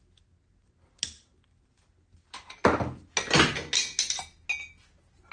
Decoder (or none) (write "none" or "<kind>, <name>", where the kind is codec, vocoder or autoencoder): none